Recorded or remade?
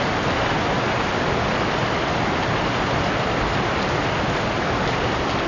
recorded